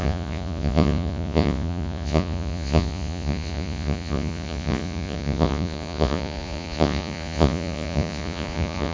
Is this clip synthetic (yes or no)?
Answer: yes